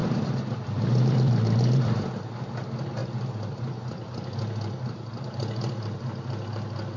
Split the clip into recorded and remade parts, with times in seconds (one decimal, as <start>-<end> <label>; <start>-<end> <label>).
0.0-2.1 remade; 2.1-3.0 recorded; 3.0-3.8 remade; 3.8-7.0 recorded